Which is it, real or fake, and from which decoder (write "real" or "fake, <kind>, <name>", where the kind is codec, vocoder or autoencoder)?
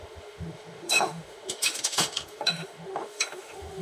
fake, autoencoder, DAC-VAE